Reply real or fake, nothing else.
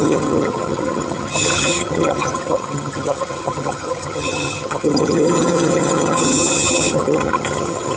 fake